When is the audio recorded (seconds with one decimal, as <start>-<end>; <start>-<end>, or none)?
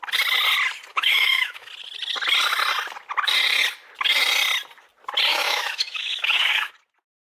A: 0.0-0.9; 1.7-5.3; 6.7-7.3